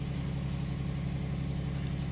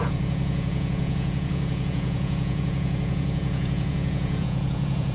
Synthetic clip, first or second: second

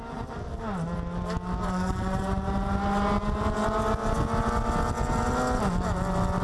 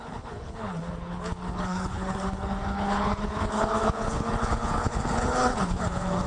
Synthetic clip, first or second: second